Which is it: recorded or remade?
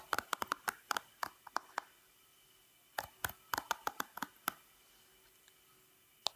recorded